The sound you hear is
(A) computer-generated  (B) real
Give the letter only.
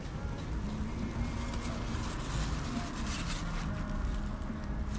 B